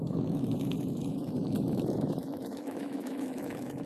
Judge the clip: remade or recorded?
remade